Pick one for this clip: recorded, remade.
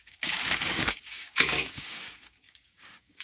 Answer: remade